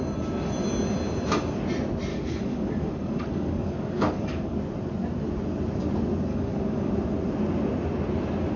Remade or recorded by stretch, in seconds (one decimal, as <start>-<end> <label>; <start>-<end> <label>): 0.0-2.1 recorded; 2.1-4.6 remade; 4.6-6.3 recorded; 6.3-6.9 remade; 6.9-8.6 recorded